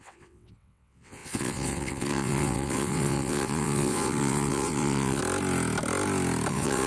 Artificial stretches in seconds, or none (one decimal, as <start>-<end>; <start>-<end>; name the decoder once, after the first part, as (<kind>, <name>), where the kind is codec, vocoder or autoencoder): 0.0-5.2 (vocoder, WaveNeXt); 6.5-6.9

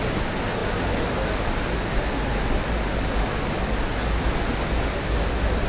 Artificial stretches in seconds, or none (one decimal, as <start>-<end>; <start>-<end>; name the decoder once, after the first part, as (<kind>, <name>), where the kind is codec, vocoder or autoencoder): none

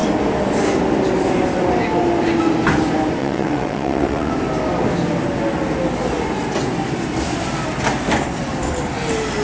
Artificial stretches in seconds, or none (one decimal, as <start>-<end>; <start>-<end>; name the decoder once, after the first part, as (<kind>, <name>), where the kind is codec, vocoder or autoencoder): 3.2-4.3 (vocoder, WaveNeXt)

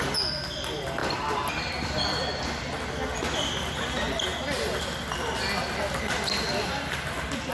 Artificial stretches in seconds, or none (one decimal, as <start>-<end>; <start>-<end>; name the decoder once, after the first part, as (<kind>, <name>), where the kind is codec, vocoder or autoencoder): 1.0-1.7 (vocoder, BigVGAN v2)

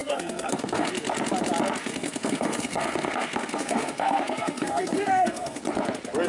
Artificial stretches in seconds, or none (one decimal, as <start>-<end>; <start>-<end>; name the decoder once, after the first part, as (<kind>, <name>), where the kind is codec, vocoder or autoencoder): 0.0-0.9 (codec, SNAC); 1.8-5.6

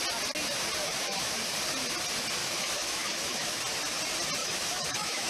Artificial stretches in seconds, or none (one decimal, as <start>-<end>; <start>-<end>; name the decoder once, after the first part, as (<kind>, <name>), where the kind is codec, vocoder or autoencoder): 0.8-1.4 (autoencoder, DAC-VAE); 2.4-3.6; 4.4-5.3

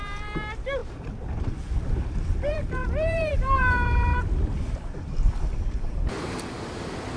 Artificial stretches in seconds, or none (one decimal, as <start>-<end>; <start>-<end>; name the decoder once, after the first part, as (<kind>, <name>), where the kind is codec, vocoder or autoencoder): 0.0-0.8 (vocoder, BigVGAN v2); 1.4-7.2